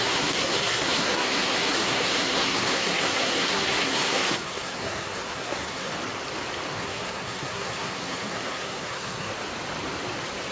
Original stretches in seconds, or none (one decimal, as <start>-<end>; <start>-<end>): 5.9-6.8; 9.3-10.5